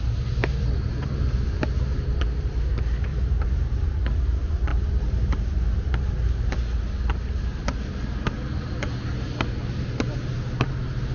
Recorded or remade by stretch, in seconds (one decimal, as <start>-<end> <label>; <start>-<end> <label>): 0.0-0.4 recorded; 0.4-2.2 remade; 2.2-3.1 recorded; 3.1-4.0 remade; 4.0-4.7 recorded; 4.7-6.1 remade; 6.1-11.1 recorded